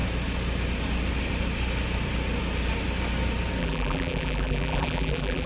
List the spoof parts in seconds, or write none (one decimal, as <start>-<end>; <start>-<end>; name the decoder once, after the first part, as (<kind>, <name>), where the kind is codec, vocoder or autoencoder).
3.6-5.5 (vocoder, BigVGAN v2)